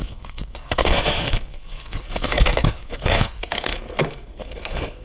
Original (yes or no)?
no